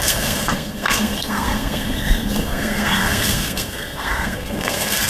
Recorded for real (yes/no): no